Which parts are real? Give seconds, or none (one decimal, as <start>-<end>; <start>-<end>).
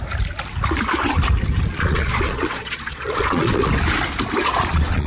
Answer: 0.0-1.7; 3.7-4.4